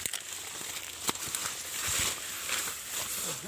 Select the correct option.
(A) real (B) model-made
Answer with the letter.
A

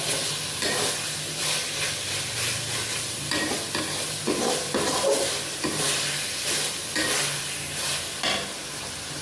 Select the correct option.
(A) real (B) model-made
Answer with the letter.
A